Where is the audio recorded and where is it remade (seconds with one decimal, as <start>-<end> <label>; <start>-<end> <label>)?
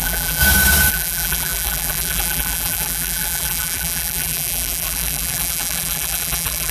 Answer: 0.0-0.4 remade; 0.4-0.9 recorded; 0.9-6.7 remade